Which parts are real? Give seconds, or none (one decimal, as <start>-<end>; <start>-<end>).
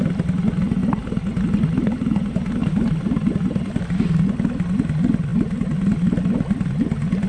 0.0-7.3